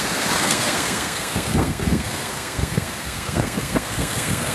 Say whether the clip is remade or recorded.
remade